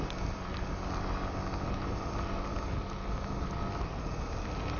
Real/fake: real